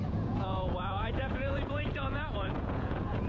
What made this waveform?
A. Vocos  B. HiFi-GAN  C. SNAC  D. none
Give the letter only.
A